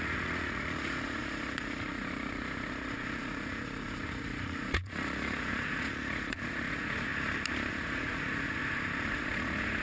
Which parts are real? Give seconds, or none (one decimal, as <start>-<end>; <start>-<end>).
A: 7.1-7.7; 8.6-9.1